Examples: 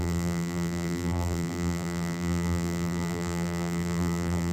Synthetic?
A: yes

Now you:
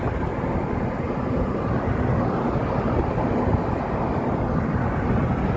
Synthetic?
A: no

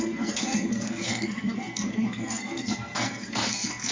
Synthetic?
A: yes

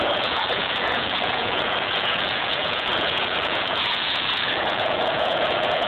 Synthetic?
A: yes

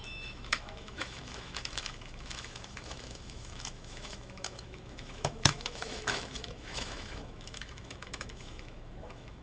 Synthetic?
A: yes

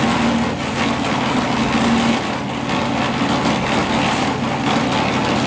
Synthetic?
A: no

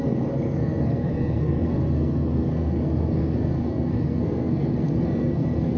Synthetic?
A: yes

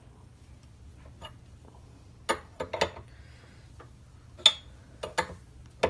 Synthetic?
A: no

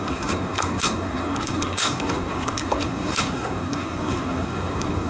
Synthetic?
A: yes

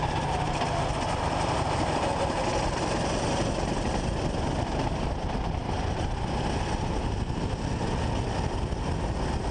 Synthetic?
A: no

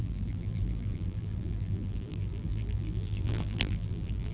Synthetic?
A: yes